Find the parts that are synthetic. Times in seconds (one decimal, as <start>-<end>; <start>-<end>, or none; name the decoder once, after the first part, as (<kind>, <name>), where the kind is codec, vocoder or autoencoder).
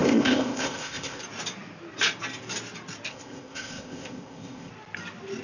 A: 0.0-1.2 (codec, ZipCodec); 3.1-4.7